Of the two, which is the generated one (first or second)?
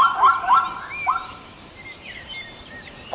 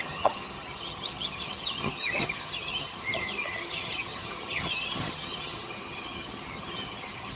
second